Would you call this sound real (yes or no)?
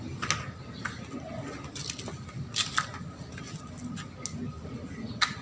yes